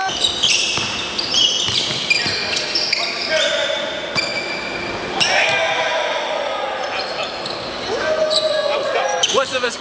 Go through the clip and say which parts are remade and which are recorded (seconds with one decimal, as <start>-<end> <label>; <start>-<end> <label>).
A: 0.0-2.4 remade; 2.4-3.1 recorded; 3.1-5.6 remade; 5.6-7.7 recorded; 7.7-9.8 remade

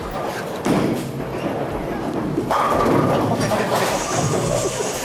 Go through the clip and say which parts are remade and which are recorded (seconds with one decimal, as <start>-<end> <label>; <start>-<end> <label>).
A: 0.0-1.8 recorded; 1.8-2.7 remade; 2.7-5.0 recorded

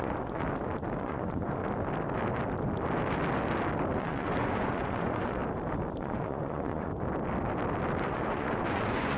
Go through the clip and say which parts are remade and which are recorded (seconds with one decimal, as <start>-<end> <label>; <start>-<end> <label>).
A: 0.0-0.4 remade; 0.4-1.0 recorded; 1.0-1.6 remade; 1.6-4.0 recorded; 4.0-5.4 remade; 5.4-6.0 recorded; 6.0-6.9 remade; 6.9-8.1 recorded; 8.1-9.2 remade